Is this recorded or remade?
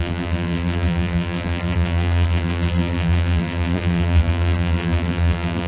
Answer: remade